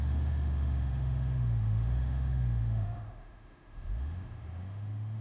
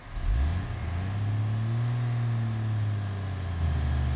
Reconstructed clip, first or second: first